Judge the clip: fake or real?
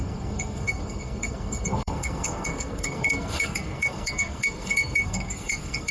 fake